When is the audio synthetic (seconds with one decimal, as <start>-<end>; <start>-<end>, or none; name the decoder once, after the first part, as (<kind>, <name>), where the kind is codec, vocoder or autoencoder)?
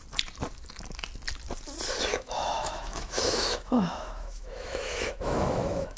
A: 2.1-6.0 (autoencoder, DAC-VAE)